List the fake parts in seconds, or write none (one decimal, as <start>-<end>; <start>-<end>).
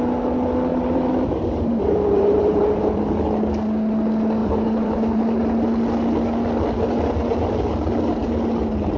0.7-3.0; 4.4-5.2